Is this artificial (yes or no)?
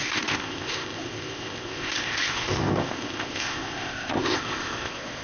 yes